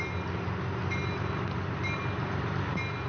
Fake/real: real